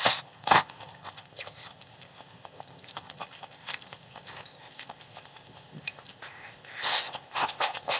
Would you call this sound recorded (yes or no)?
no